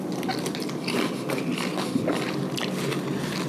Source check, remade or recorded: recorded